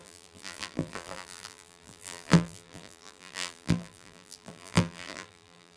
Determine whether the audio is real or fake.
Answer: fake